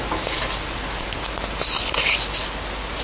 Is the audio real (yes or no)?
yes